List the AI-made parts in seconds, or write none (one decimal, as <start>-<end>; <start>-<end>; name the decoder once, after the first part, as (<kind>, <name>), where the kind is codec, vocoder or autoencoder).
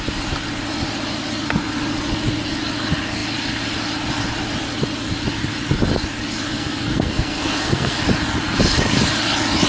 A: 6.5-8.0 (codec, SNAC)